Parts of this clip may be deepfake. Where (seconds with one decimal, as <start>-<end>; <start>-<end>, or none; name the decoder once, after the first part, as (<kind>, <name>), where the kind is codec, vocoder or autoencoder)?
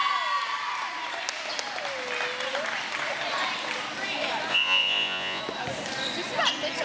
4.5-5.4 (vocoder, Vocos)